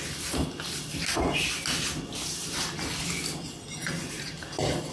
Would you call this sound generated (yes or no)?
no